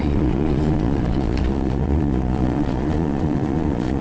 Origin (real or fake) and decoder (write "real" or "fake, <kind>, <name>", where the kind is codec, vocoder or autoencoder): fake, vocoder, Vocos